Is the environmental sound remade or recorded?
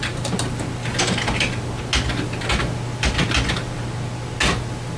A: recorded